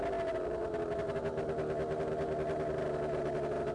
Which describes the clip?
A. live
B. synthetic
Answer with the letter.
A